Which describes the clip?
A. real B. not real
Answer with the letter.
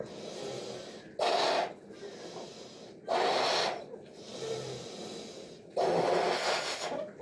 A